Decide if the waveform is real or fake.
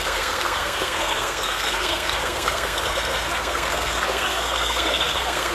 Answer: fake